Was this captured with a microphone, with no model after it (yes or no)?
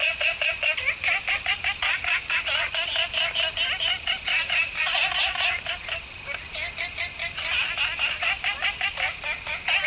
yes